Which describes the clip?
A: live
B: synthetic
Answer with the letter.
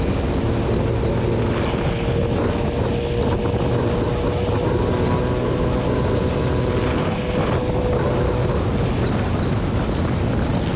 A